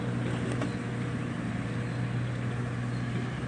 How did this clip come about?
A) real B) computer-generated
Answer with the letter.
A